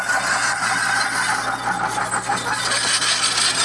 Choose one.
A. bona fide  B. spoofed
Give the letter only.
A